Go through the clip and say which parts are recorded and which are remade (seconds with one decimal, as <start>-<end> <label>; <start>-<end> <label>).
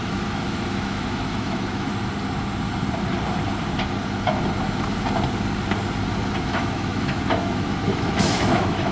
0.0-1.9 remade; 1.9-6.4 recorded; 6.4-8.9 remade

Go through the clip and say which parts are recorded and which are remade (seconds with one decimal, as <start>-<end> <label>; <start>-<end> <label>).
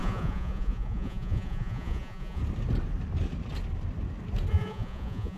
0.0-2.4 remade; 2.4-4.5 recorded; 4.5-5.4 remade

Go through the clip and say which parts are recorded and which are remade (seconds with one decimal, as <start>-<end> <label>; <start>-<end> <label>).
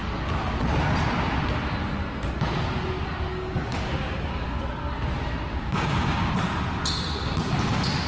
0.0-3.3 recorded; 3.3-4.6 remade; 4.6-5.5 recorded; 5.5-6.3 remade; 6.3-8.1 recorded